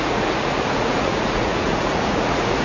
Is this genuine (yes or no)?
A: no